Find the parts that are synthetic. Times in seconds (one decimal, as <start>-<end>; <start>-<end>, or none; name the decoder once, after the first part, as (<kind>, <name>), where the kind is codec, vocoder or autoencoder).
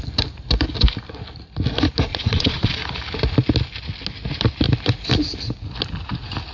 2.1-2.7 (vocoder, Vocos)